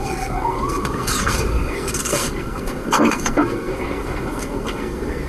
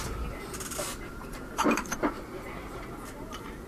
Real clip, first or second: second